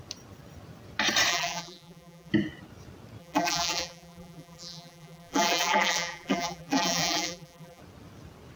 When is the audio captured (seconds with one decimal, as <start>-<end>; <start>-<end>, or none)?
0.0-1.3; 2.3-3.2; 7.8-8.6